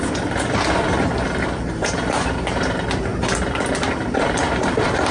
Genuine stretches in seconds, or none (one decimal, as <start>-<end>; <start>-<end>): 3.1-3.7